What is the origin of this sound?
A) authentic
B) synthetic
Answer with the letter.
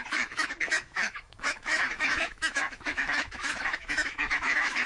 B